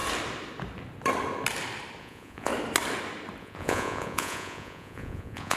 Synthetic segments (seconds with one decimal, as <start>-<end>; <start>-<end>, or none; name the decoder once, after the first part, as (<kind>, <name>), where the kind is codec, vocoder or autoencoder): 2.0-2.5 (vocoder, Vocos); 3.4-5.6

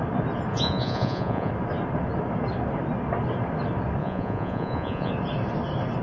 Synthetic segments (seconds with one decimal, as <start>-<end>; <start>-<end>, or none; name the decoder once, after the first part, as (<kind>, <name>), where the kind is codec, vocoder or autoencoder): 0.5-1.5 (vocoder, Vocos); 4.0-5.1

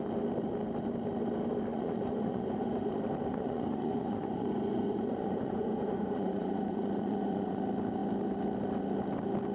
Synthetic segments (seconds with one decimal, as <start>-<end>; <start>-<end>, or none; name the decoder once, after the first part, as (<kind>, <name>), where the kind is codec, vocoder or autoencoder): 1.7-2.8 (vocoder, Vocos); 3.3-7.6

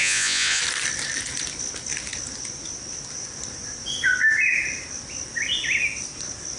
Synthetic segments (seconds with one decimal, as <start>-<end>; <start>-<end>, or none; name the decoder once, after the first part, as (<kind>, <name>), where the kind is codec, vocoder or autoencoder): 0.0-0.6 (vocoder, Vocos)

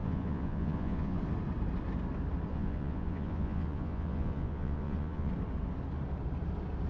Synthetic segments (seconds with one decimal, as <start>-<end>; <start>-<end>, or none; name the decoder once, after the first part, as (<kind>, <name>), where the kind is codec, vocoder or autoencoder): 0.0-1.2 (vocoder, Vocos); 2.5-5.3